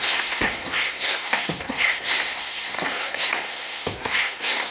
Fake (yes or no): yes